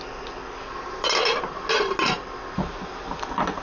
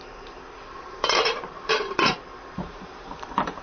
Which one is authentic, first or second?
first